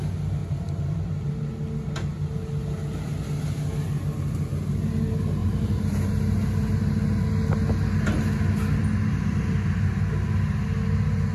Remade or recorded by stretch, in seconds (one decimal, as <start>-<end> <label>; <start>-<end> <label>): 0.0-0.4 recorded; 0.4-1.0 remade; 1.0-5.4 recorded; 5.4-6.1 remade; 6.1-11.3 recorded